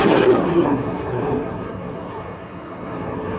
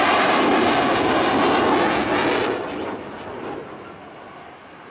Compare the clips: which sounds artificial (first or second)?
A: first